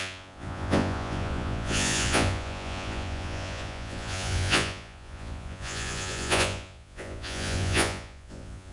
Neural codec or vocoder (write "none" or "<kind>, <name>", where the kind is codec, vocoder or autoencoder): vocoder, Vocos